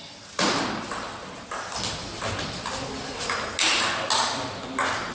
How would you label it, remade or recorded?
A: recorded